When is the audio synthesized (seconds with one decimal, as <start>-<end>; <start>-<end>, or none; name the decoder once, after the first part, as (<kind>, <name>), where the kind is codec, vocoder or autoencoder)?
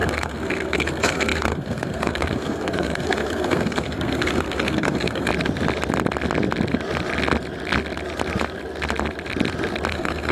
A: 0.0-5.3 (codec, SNAC); 9.9-10.3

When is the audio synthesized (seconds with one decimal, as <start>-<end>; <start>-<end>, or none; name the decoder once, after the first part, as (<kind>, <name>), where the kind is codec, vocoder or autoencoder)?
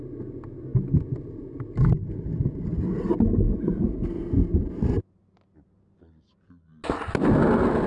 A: none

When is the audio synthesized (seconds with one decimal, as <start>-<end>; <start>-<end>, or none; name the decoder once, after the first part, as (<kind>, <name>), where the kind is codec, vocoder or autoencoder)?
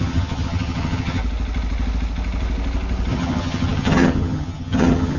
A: 0.0-1.2 (vocoder, HiFi-GAN); 3.1-5.2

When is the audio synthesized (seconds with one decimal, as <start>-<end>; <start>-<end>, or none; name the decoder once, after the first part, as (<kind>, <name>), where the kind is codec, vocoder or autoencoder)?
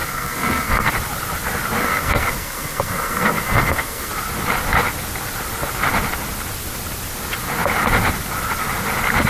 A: 0.0-0.9 (codec, SNAC); 1.8-4.1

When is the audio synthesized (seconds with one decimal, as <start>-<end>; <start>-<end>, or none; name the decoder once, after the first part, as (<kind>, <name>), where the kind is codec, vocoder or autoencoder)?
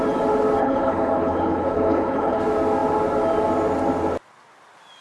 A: 0.6-2.4 (codec, HILCodec)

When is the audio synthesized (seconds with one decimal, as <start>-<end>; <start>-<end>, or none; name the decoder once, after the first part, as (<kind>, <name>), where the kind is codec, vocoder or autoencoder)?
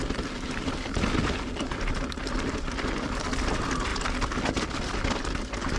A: none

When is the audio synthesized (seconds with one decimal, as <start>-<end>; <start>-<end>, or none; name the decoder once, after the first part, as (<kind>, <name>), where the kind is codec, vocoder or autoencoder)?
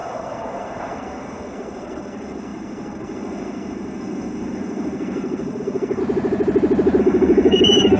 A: 0.0-6.0 (codec, SNAC); 7.0-8.0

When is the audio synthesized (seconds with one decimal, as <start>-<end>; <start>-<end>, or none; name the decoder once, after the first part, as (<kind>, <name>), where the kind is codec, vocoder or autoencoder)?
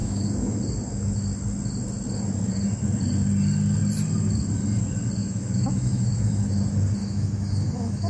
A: 0.0-0.6 (autoencoder, DAC-VAE); 5.2-6.5; 7.0-8.1